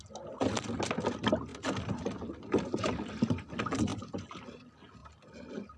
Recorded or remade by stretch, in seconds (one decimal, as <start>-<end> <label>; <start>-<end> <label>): 0.0-5.8 recorded